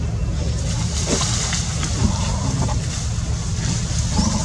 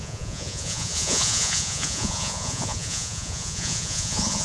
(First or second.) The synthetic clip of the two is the second